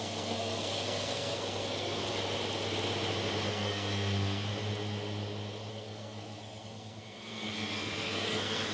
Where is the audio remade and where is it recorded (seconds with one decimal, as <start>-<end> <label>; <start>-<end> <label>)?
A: 0.0-2.0 remade; 2.0-3.5 recorded; 3.5-4.5 remade; 4.5-5.7 recorded; 5.7-8.7 remade